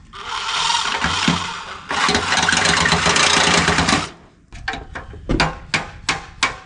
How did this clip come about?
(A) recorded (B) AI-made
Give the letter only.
A